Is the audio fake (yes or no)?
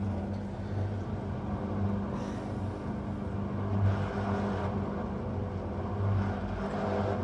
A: no